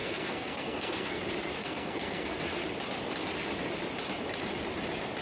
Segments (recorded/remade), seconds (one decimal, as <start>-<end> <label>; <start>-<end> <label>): 0.0-1.2 remade; 1.2-1.6 recorded; 1.6-2.4 remade; 2.4-5.2 recorded